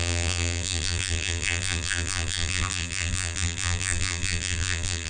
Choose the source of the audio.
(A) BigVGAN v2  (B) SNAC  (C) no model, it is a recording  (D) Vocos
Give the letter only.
A